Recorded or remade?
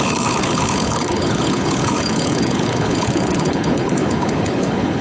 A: remade